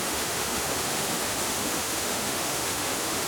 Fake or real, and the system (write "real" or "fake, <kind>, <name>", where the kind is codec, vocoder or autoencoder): fake, autoencoder, DAC-VAE